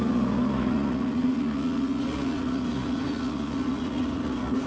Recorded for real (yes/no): no